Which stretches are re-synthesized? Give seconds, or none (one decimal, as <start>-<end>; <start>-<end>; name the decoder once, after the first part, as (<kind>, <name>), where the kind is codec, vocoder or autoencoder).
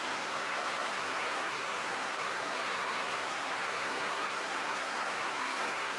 0.0-6.0 (codec, SNAC)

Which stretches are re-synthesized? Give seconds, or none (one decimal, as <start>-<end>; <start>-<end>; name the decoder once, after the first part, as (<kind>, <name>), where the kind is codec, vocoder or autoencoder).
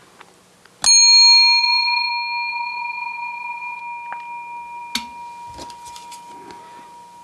1.6-2.1 (vocoder, Vocos); 2.5-3.8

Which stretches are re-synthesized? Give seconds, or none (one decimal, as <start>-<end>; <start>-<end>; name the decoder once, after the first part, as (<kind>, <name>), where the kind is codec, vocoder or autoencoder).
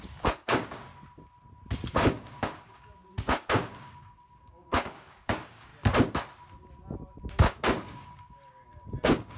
0.0-0.9 (codec, DAC); 1.9-5.7; 7.3-9.4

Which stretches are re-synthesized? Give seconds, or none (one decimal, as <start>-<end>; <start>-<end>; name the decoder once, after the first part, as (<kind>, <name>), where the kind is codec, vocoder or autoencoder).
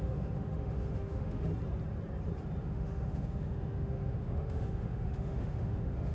0.0-1.5 (autoencoder, DAC-VAE); 2.6-6.1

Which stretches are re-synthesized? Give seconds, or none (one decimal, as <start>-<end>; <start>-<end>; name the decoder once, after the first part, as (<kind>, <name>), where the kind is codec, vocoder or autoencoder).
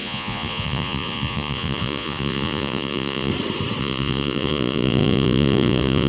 0.0-3.3 (vocoder, Vocos); 3.8-6.1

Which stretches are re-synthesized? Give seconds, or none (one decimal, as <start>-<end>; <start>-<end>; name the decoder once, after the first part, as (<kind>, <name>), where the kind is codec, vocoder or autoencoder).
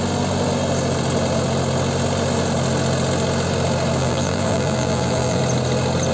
4.0-5.4 (vocoder, BigVGAN v2)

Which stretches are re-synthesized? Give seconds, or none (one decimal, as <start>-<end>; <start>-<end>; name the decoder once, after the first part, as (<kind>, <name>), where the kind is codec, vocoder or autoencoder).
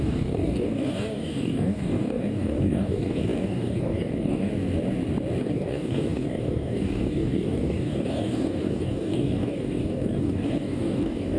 0.0-4.5 (codec, DAC); 5.4-11.4